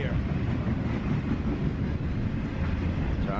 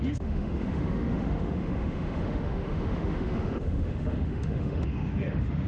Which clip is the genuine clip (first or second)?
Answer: first